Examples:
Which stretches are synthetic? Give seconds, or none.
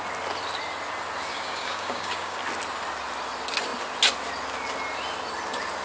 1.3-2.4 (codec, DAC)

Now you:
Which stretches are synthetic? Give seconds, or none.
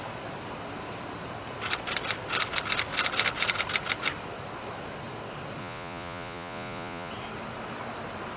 5.6-7.1 (vocoder, Vocos)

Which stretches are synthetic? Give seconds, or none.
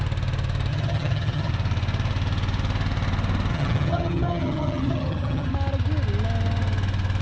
0.7-1.5 (vocoder, HiFi-GAN); 3.5-5.5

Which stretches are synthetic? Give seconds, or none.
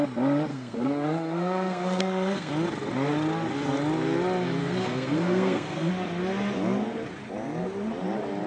0.5-2.5 (codec, SNAC); 4.6-5.9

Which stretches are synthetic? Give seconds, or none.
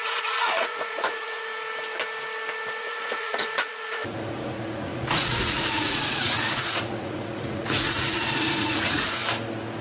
0.0-1.5 (vocoder, Vocos); 2.8-9.2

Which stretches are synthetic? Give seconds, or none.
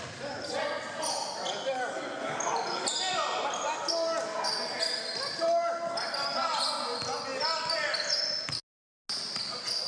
none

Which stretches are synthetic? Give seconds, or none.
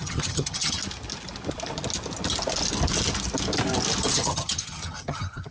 0.0-0.8 (vocoder, HiFi-GAN); 4.1-5.5